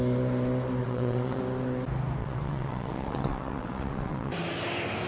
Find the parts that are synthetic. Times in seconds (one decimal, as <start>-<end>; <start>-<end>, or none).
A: 0.8-1.4; 2.2-4.3

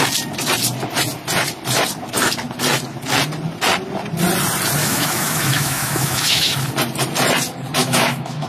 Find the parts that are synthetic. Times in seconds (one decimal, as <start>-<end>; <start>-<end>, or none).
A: 4.8-6.7; 7.8-8.5